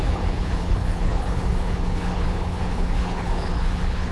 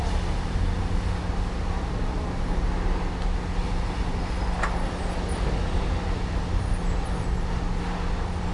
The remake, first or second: first